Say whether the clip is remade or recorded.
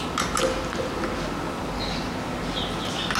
recorded